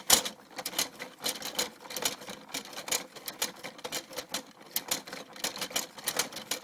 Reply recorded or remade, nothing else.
recorded